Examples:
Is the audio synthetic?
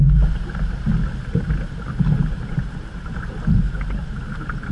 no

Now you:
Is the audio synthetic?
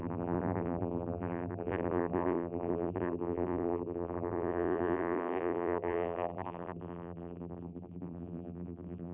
yes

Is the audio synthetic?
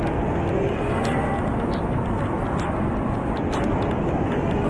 yes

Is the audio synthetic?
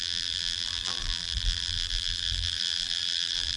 yes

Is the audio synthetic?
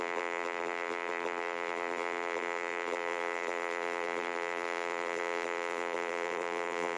yes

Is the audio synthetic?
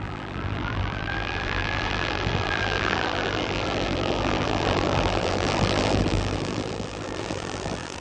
yes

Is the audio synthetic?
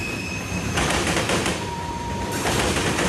yes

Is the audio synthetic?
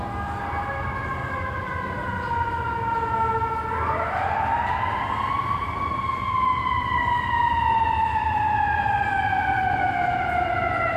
no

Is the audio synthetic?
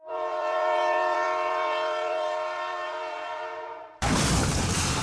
yes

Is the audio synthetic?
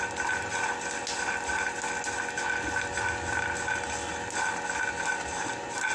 no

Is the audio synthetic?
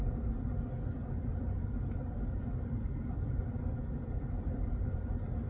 yes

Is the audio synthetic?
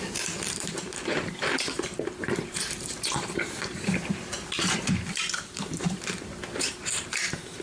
yes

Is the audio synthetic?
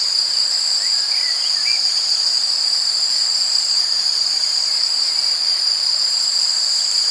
yes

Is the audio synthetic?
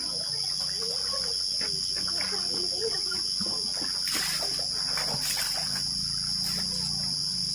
no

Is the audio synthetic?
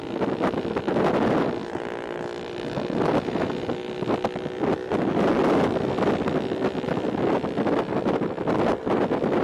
no